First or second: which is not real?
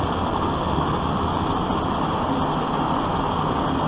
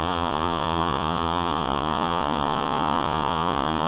second